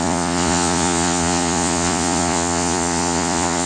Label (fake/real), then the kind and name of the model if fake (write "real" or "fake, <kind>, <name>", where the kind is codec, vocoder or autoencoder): fake, vocoder, Vocos